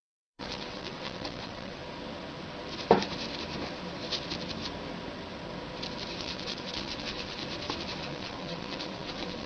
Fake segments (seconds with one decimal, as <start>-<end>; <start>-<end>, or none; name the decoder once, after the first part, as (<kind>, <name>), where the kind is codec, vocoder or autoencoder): 0.0-1.8 (vocoder, WaveNeXt); 6.2-7.4; 8.0-9.5